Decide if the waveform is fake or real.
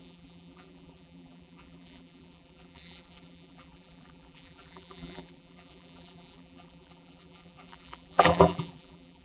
fake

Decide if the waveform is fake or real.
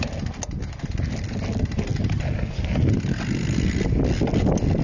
real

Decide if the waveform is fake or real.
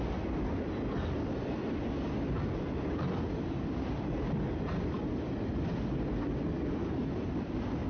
real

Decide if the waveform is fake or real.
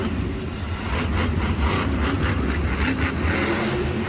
real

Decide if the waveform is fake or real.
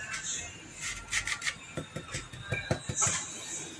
real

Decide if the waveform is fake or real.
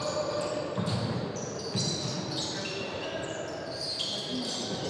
fake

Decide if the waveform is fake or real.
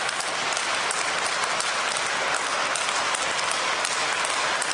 real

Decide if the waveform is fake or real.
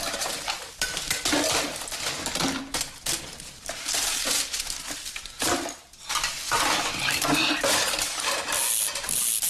real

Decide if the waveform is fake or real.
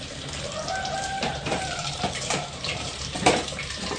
fake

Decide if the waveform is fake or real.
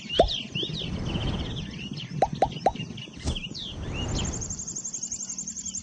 real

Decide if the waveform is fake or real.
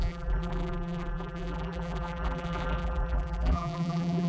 fake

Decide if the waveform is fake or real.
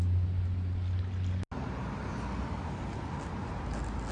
real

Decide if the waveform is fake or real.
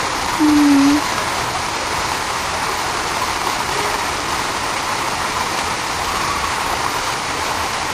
fake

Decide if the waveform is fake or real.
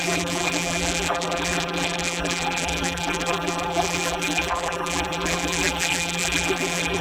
fake